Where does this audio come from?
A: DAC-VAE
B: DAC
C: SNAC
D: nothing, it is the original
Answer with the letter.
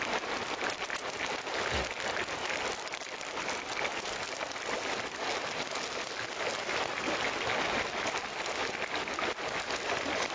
D